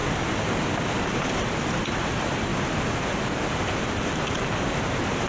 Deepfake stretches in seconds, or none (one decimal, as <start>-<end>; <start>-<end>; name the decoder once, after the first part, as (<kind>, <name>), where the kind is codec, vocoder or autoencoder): 0.0-2.5 (vocoder, BigVGAN v2); 3.8-5.3